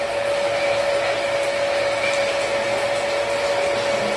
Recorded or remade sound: recorded